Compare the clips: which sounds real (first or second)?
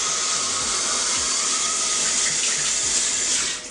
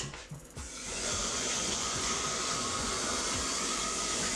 first